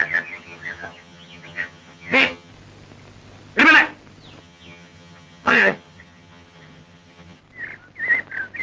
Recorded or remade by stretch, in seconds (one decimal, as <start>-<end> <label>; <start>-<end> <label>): 0.0-2.5 remade; 2.5-4.4 recorded; 4.4-7.4 remade; 7.4-8.6 recorded